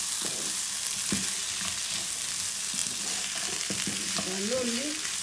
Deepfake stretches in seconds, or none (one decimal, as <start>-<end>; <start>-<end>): none